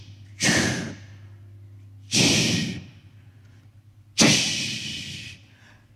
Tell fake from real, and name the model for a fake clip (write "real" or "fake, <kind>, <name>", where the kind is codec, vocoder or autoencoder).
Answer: real